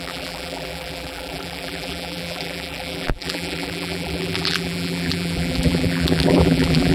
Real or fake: fake